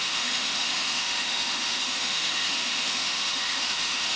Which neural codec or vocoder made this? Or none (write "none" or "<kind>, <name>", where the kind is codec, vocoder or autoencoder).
autoencoder, DAC-VAE